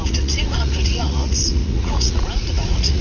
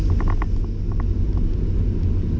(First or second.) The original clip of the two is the second